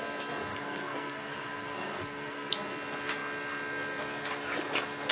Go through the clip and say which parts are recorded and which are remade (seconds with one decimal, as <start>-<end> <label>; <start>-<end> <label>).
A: 0.0-0.5 recorded; 0.5-2.5 remade; 2.5-5.1 recorded